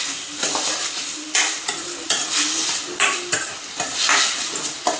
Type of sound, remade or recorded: recorded